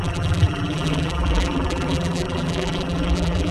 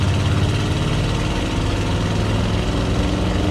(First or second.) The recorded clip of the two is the second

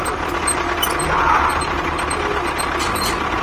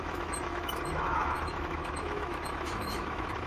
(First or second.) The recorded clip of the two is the first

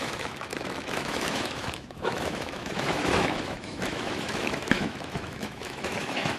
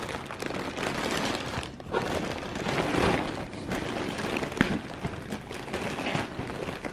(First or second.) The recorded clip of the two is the second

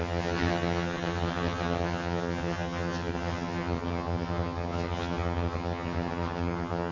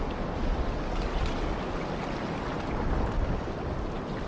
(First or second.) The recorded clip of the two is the second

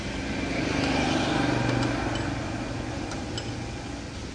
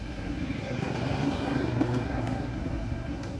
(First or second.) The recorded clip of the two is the first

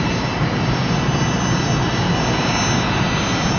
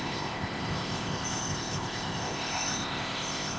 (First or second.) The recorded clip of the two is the first